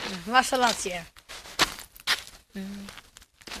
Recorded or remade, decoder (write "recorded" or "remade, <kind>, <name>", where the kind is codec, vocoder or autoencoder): recorded